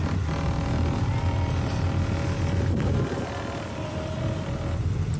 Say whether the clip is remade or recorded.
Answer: recorded